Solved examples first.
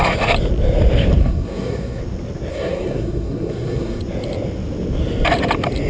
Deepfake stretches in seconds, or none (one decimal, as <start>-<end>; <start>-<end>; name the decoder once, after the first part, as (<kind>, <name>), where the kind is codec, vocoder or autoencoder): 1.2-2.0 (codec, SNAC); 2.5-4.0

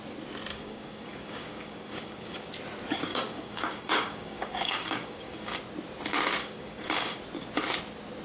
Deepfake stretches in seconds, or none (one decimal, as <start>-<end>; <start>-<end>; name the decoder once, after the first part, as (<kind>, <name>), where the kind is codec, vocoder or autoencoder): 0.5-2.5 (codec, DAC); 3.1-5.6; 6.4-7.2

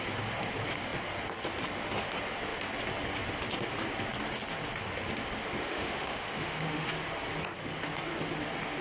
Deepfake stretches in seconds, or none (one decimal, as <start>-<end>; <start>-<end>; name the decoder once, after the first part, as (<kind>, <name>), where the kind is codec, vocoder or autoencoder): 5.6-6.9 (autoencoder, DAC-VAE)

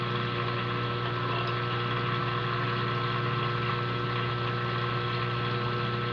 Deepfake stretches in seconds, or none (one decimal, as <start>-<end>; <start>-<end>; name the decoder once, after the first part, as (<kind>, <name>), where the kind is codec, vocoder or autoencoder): none

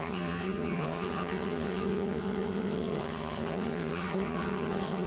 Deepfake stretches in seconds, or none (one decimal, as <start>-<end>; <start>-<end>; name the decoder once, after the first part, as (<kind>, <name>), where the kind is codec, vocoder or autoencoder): 0.0-5.1 (vocoder, HiFi-GAN)